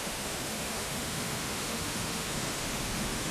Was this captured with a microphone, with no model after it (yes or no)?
no